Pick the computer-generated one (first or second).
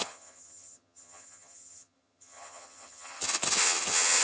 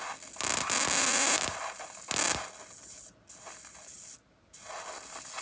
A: first